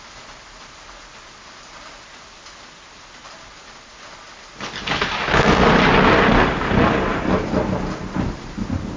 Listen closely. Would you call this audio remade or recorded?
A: recorded